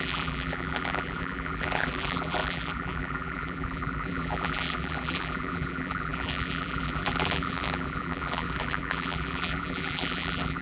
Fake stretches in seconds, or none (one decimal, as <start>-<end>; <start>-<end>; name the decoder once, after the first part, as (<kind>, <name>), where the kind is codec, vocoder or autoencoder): 0.0-10.6 (vocoder, BigVGAN v2)